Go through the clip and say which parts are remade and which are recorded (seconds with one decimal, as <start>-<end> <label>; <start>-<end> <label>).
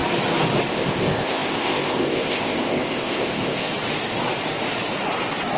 0.0-0.7 recorded; 0.7-3.7 remade; 3.7-5.6 recorded